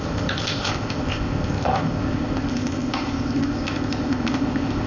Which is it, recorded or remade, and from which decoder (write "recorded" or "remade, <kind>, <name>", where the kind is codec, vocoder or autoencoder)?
remade, codec, ZipCodec